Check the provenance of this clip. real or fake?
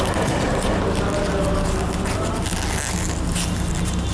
real